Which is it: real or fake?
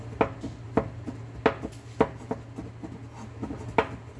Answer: real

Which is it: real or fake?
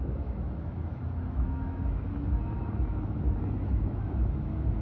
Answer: fake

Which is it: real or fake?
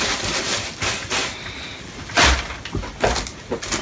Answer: real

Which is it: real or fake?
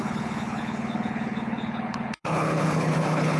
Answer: fake